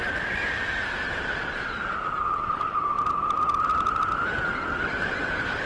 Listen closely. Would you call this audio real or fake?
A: real